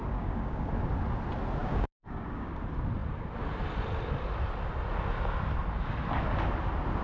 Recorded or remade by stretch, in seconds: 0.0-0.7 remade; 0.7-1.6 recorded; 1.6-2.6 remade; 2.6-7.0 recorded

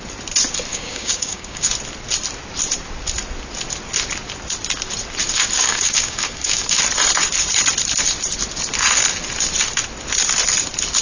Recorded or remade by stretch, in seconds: 0.0-0.7 recorded; 0.7-1.7 remade; 1.7-5.2 recorded; 5.2-6.8 remade; 6.8-11.0 recorded

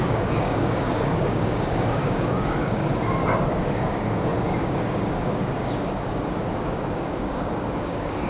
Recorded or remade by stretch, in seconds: 0.0-2.8 remade; 2.8-3.5 recorded; 3.5-8.3 remade

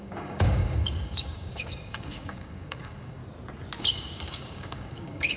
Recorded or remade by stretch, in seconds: 0.0-3.2 remade; 3.2-3.8 recorded; 3.8-5.4 remade

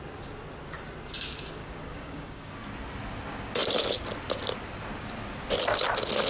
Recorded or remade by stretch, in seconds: 0.0-1.6 recorded; 1.6-2.5 remade; 2.5-6.3 recorded